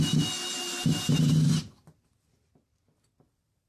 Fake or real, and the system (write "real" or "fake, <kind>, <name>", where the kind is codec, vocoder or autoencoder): real